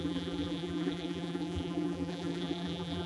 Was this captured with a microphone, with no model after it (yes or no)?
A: no